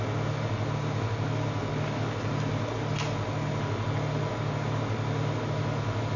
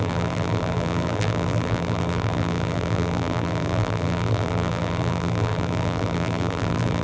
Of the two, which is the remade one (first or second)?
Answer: second